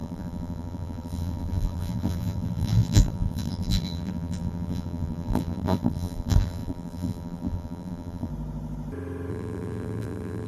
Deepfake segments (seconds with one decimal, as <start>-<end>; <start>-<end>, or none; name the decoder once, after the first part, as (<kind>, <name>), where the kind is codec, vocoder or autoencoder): 0.0-8.3 (vocoder, BigVGAN v2); 9.3-10.5